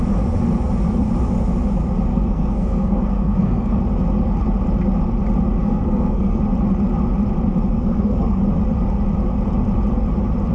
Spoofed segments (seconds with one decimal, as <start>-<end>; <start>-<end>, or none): 2.1-3.8; 5.6-6.4; 7.7-8.4